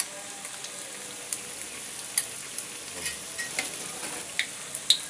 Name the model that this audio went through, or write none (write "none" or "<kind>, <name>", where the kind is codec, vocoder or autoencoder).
none